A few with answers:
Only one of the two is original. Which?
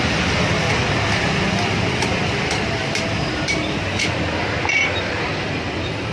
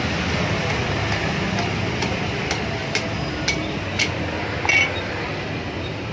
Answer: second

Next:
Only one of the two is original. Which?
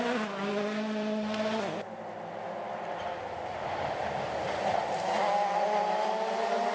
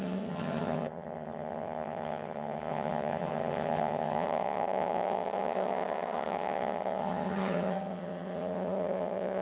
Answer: first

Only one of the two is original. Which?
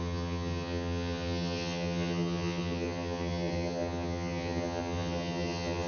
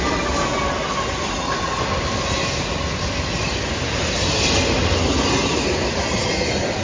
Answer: second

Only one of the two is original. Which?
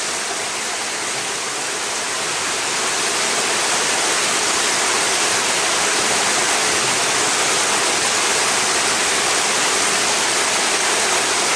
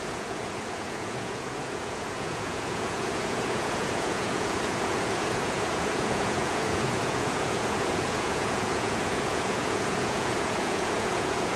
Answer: first